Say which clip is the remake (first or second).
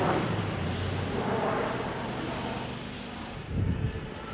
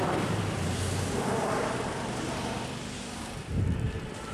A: second